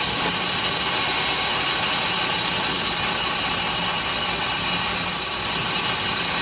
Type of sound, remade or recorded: recorded